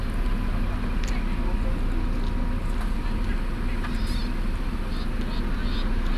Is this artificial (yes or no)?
no